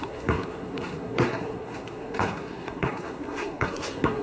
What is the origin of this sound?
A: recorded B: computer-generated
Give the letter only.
B